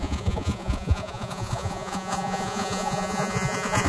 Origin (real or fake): fake